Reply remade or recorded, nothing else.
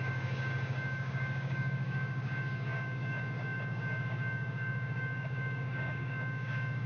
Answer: remade